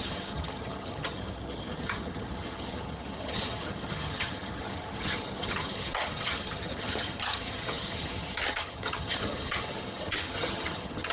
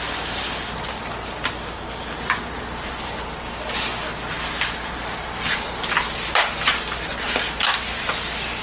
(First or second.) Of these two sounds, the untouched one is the second